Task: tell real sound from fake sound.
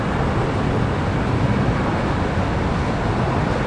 real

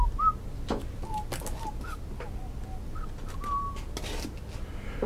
real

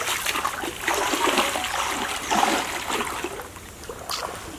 real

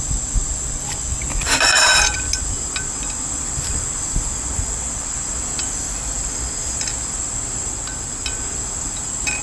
real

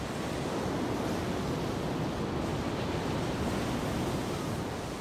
real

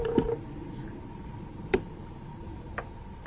real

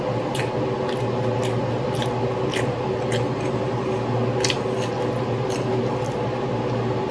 real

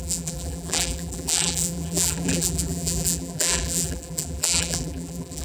fake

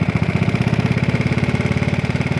fake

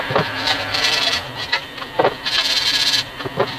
fake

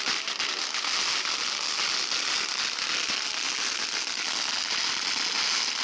real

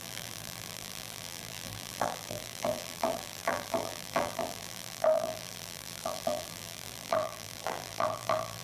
fake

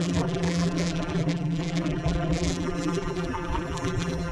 fake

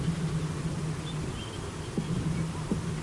real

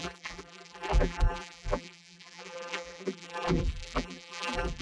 fake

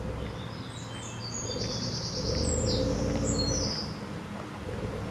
real